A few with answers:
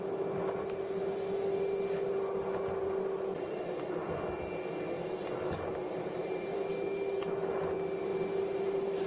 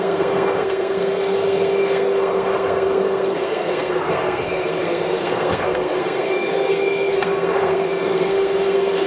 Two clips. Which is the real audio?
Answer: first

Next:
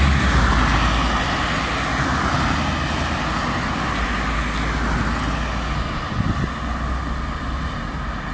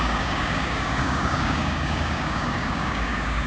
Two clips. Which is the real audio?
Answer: first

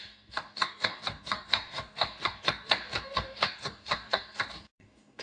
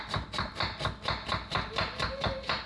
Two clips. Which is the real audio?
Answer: second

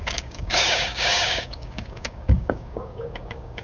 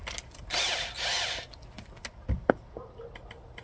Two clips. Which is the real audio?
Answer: second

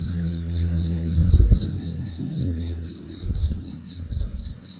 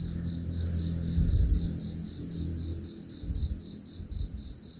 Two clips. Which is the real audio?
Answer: second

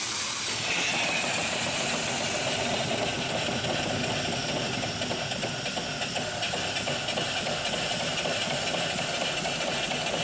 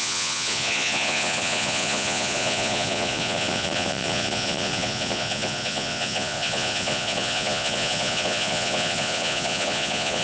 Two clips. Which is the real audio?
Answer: first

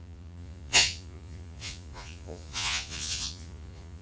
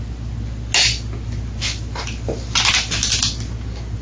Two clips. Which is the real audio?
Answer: second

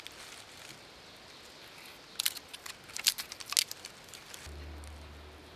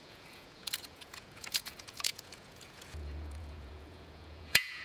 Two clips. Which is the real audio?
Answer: first